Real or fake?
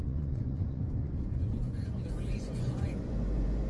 fake